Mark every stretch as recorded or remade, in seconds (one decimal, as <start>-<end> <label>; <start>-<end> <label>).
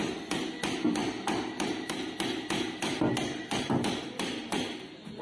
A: 0.0-5.2 recorded